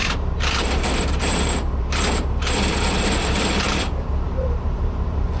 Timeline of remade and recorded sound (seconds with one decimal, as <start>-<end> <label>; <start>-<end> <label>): 0.0-5.4 remade